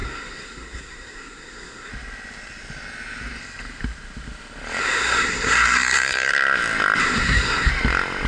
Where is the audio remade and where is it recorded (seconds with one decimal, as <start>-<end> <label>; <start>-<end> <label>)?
0.0-1.9 remade; 1.9-4.8 recorded; 4.8-6.3 remade; 6.3-7.0 recorded; 7.0-7.7 remade; 7.7-8.3 recorded